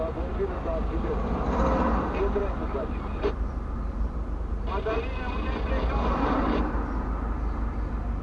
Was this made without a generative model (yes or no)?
yes